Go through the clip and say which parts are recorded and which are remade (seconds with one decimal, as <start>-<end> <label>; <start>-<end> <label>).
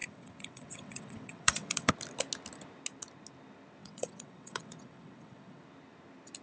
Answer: 0.0-1.9 remade; 1.9-3.8 recorded; 3.8-5.6 remade; 5.6-6.4 recorded